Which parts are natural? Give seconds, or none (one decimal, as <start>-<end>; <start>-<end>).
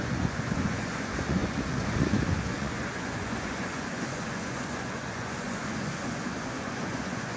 none